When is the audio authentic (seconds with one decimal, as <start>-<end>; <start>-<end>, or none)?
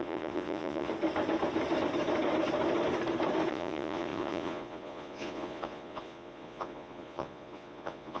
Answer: 0.9-3.5